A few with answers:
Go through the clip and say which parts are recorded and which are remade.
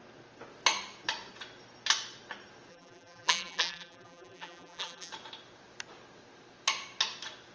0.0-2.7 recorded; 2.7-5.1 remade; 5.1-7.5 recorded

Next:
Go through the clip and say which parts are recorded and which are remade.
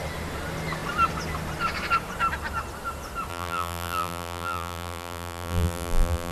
0.0-3.3 recorded; 3.3-6.3 remade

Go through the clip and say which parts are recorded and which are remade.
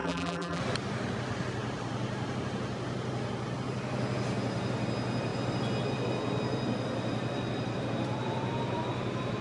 0.0-0.6 remade; 0.6-9.4 recorded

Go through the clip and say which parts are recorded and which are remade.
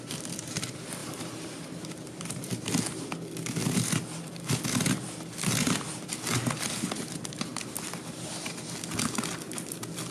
0.0-1.0 recorded; 1.0-2.7 remade; 2.7-10.1 recorded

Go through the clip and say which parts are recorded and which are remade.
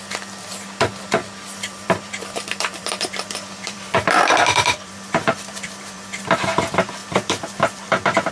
0.0-1.2 recorded; 1.2-6.2 remade; 6.2-7.0 recorded; 7.0-8.3 remade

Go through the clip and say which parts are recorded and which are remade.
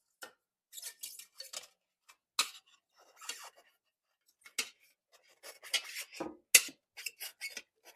0.0-8.0 recorded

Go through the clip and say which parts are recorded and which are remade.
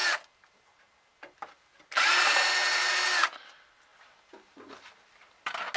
0.0-5.8 recorded